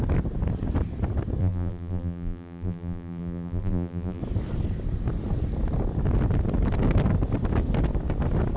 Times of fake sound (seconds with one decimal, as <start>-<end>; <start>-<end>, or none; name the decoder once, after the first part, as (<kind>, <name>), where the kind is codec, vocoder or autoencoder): 1.4-4.2 (vocoder, BigVGAN v2)

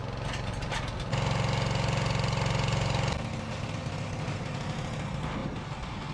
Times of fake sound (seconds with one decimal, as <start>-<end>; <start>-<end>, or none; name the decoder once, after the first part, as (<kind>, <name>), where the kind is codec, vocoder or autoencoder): none

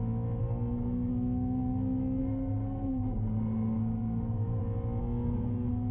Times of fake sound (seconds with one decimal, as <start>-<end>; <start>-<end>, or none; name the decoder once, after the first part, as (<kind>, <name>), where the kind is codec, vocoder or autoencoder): 0.4-1.1 (codec, SNAC); 2.2-4.6; 5.0-5.9

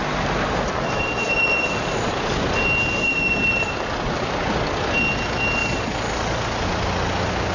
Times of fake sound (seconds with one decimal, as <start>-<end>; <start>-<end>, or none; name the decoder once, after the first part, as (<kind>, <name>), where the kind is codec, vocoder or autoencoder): none

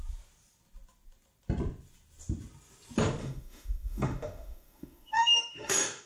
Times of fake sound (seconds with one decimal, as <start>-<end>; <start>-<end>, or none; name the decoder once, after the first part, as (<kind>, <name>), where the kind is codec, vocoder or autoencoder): 3.2-6.1 (autoencoder, DAC-VAE)